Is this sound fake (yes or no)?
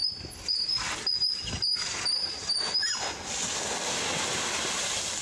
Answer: no